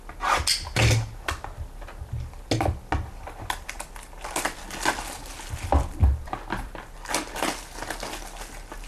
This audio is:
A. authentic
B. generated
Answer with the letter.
A